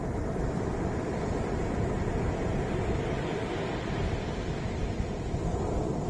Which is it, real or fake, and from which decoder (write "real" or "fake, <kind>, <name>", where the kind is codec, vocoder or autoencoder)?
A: real